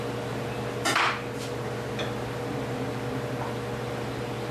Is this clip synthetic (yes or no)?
no